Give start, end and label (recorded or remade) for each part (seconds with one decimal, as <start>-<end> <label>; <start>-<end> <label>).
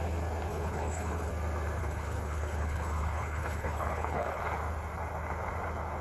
0.0-0.5 recorded; 0.5-1.3 remade; 1.3-1.8 recorded; 1.8-4.4 remade; 4.4-6.0 recorded